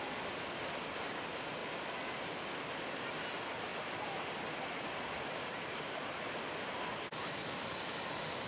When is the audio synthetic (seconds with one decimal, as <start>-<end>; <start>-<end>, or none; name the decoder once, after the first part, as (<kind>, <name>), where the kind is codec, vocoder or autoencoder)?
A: 3.7-5.6 (vocoder, BigVGAN v2); 7.2-8.0